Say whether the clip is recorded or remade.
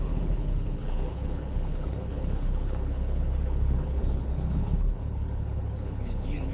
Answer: remade